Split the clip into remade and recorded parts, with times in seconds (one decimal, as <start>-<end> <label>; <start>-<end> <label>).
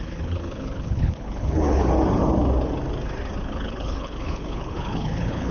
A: 0.0-1.8 remade; 1.8-3.4 recorded; 3.4-5.5 remade